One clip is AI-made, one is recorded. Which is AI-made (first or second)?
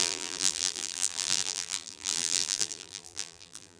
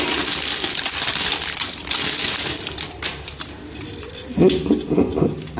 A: first